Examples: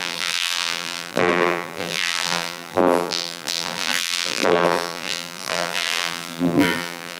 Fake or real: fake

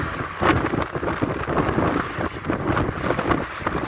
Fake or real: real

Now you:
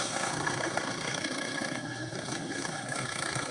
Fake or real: fake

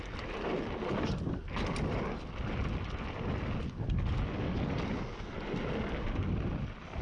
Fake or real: real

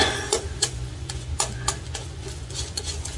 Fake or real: fake